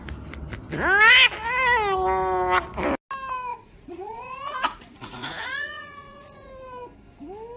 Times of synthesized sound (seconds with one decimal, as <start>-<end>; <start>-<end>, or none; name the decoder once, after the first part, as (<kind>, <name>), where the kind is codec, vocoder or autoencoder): 3.5-6.5 (vocoder, Vocos)